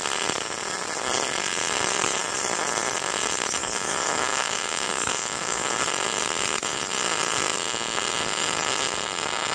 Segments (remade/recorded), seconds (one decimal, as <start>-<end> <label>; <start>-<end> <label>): 0.0-3.6 recorded; 3.6-5.8 remade; 5.8-9.5 recorded